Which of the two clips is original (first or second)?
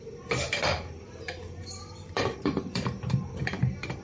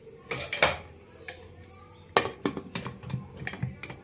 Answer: second